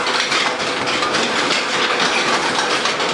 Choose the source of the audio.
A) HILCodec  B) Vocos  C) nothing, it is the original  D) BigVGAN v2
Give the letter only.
C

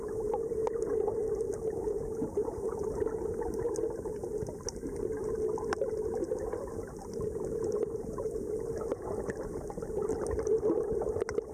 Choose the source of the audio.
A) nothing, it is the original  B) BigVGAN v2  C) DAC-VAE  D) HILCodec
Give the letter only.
A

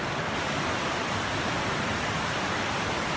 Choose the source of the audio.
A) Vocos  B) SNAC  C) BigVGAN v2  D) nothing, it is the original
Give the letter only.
D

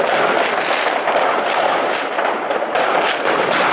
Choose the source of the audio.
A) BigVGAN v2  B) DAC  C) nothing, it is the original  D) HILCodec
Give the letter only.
C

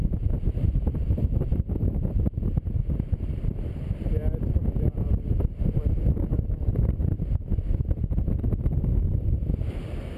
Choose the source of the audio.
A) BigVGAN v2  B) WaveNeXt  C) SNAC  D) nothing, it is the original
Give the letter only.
A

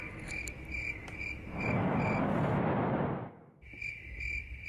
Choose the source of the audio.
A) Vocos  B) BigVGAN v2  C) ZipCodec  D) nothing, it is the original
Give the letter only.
D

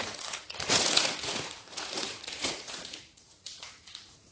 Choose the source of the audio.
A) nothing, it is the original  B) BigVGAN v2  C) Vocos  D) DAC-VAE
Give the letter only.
C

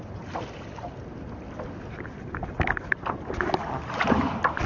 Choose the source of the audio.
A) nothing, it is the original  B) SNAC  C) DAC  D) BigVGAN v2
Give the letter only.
A